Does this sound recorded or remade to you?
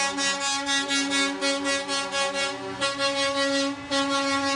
recorded